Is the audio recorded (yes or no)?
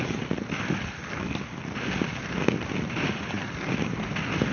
yes